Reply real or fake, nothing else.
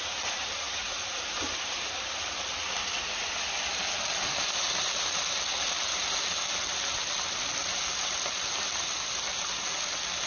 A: real